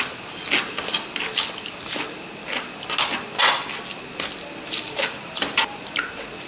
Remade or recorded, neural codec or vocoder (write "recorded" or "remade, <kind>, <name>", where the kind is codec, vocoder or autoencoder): recorded